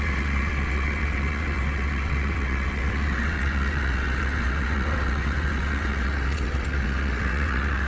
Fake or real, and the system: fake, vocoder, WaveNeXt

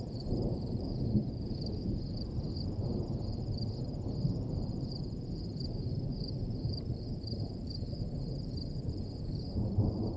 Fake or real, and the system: fake, vocoder, BigVGAN v2